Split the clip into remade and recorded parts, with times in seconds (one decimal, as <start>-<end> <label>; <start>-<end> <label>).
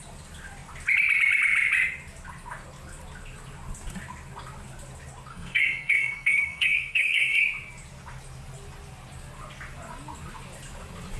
0.0-5.3 recorded; 5.3-7.4 remade; 7.4-11.2 recorded